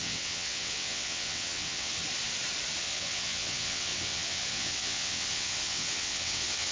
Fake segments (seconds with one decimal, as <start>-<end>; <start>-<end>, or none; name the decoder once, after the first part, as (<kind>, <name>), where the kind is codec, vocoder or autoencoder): 0.0-2.0 (vocoder, WaveNeXt); 2.8-6.7